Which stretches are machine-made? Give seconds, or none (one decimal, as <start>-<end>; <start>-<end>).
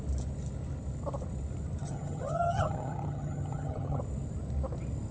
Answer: 1.8-4.0